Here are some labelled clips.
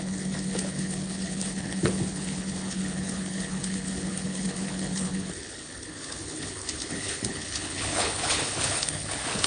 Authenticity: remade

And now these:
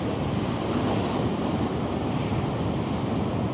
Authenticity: recorded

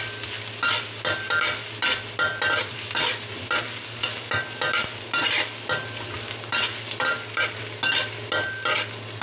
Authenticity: recorded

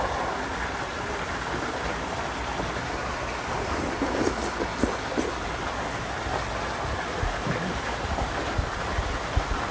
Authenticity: recorded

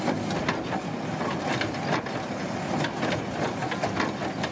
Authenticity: recorded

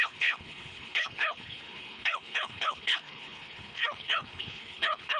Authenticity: remade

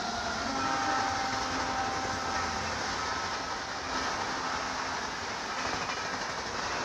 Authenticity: recorded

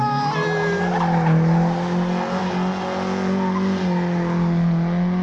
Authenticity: recorded